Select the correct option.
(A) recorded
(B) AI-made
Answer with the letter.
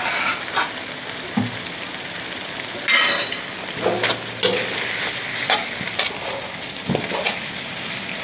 A